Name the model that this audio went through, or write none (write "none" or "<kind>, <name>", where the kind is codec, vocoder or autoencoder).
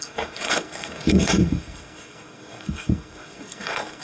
codec, SNAC